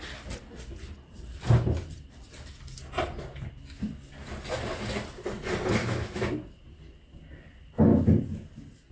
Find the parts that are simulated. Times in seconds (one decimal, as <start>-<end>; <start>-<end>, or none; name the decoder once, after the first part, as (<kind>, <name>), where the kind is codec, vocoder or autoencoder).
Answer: 5.8-6.3 (autoencoder, DAC-VAE)